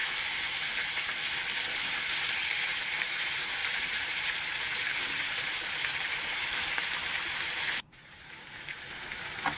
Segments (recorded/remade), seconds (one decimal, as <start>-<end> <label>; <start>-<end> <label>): 0.0-1.2 remade; 1.2-2.7 recorded; 2.7-3.2 remade; 3.2-3.6 recorded; 3.6-8.6 remade; 8.6-9.6 recorded